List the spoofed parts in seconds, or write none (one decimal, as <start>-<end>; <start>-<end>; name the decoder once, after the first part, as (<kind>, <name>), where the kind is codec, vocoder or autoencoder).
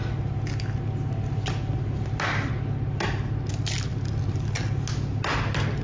none